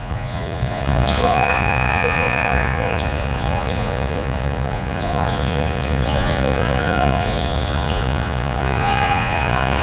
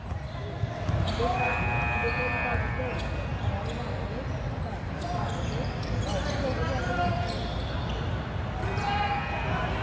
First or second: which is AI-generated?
first